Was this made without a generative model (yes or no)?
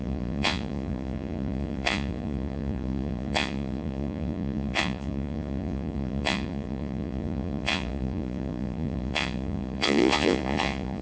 no